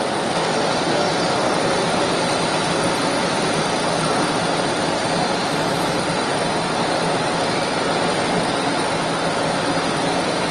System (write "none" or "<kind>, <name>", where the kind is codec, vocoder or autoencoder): none